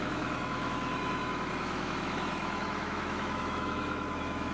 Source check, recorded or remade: remade